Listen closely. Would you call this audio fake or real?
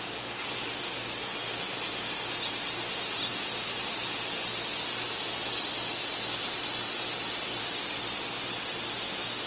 real